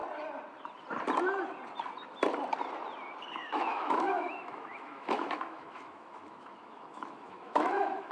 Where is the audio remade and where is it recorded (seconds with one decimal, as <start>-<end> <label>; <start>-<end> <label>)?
0.0-3.3 recorded; 3.3-8.1 remade